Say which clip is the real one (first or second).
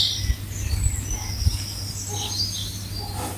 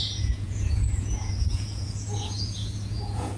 first